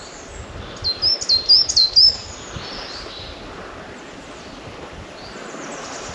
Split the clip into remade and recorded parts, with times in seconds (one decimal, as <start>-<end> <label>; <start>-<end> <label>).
0.0-6.1 recorded